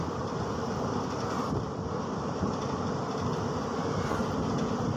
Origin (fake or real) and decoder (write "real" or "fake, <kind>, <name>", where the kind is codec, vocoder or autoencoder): real